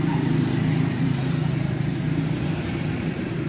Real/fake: fake